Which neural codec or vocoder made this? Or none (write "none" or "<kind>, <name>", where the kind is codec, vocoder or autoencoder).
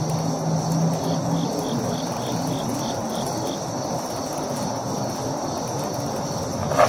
none